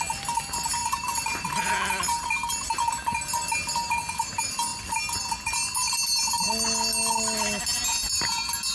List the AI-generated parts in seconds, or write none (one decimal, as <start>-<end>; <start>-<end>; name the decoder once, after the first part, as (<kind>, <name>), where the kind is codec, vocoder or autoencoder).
0.8-1.7 (vocoder, BigVGAN v2)